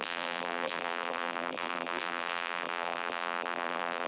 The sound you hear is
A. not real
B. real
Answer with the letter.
A